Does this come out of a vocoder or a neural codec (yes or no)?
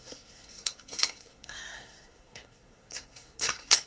yes